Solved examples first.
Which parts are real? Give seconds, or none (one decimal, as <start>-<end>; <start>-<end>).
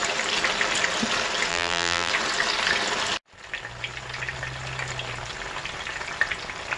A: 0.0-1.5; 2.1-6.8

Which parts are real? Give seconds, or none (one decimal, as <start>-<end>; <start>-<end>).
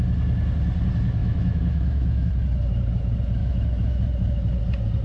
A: 0.0-1.2; 2.3-3.4; 4.0-5.0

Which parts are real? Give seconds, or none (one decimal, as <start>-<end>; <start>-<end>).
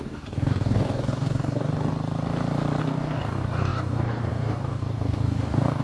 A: 1.7-2.8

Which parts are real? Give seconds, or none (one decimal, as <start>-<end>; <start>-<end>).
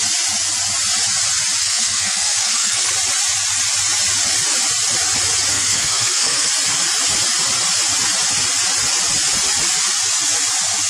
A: 0.0-1.6; 2.9-5.5; 6.5-10.9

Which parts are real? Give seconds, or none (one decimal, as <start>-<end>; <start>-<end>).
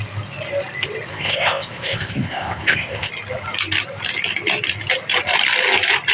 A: 0.0-1.1; 3.1-6.1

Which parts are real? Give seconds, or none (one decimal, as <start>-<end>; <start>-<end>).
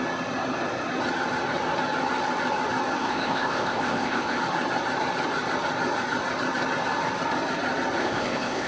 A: 0.0-3.0; 4.4-8.0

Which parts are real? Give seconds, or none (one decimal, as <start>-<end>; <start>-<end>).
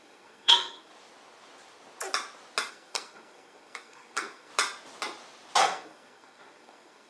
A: 0.9-2.7; 4.5-5.6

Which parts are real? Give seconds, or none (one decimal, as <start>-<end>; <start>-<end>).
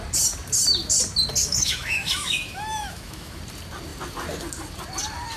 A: 0.0-1.4; 3.4-5.4